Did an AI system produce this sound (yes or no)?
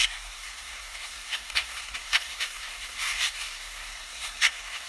yes